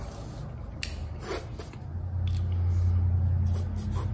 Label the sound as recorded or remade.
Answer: recorded